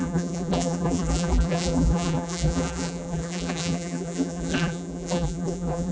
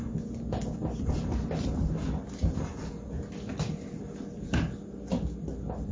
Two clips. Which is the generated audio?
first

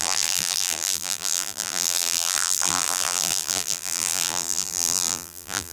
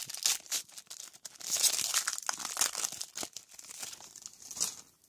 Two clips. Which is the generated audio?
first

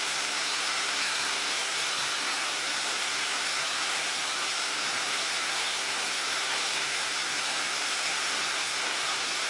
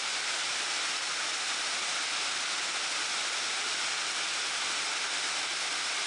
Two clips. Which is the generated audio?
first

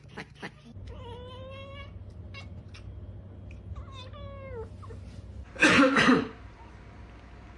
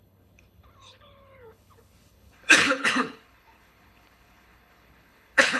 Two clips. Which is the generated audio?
second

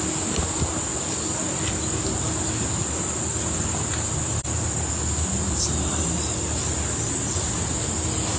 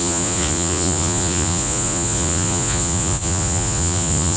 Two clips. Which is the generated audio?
second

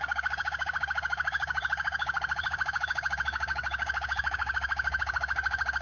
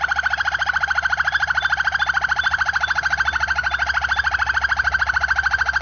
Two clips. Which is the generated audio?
first